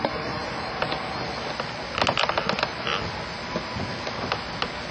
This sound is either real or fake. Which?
real